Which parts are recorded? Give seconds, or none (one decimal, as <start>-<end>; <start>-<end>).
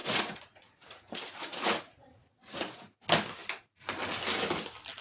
3.0-5.0